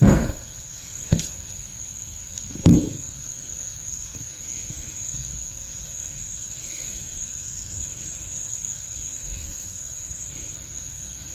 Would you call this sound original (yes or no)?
no